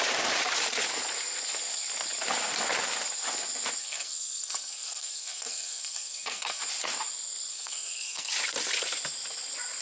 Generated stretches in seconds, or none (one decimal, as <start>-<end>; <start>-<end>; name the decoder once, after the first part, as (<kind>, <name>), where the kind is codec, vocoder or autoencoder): 3.8-6.6 (codec, SNAC); 7.5-8.3